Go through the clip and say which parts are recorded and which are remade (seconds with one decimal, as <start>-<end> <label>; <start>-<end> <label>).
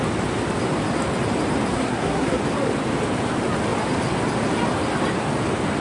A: 0.0-1.7 recorded; 1.7-2.4 remade; 2.4-5.8 recorded